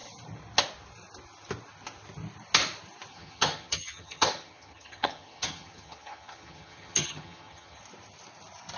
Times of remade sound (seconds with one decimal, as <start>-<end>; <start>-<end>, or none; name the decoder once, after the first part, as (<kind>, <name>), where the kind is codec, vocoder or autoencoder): 3.1-7.8 (vocoder, HiFi-GAN)